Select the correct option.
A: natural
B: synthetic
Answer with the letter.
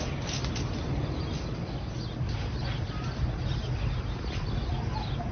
A